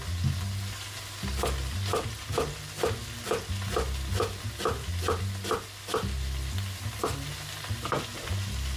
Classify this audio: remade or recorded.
recorded